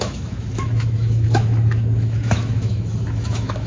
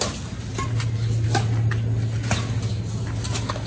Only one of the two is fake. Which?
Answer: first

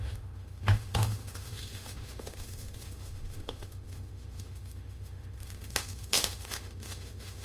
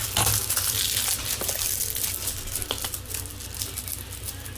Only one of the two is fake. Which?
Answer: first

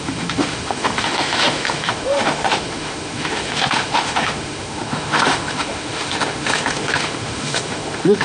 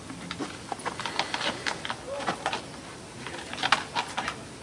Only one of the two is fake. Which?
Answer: first